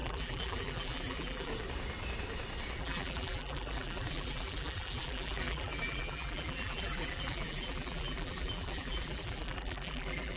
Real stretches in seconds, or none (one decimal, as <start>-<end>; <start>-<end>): 1.5-2.8